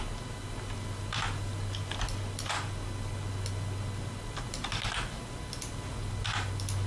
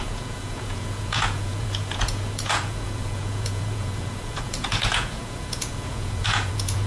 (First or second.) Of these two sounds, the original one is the first